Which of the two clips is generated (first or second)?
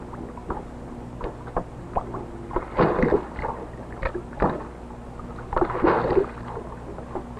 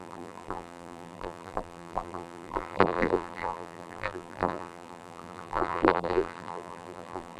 second